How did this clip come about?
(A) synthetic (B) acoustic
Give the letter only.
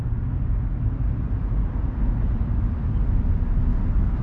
B